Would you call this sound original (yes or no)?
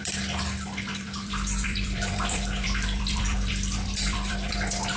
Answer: no